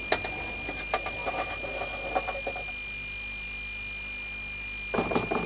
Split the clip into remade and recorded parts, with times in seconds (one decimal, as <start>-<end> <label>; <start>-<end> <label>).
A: 0.0-5.5 recorded

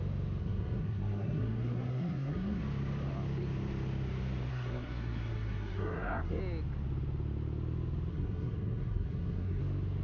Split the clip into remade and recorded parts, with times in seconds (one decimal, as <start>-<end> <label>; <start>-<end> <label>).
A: 0.0-0.4 recorded; 0.4-2.6 remade; 2.6-4.5 recorded; 4.5-6.4 remade; 6.4-8.1 recorded; 8.1-9.6 remade; 9.6-10.0 recorded